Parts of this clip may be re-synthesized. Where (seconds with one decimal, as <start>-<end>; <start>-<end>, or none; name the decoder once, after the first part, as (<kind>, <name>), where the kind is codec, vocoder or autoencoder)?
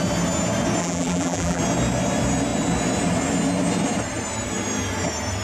0.8-1.6 (vocoder, BigVGAN v2)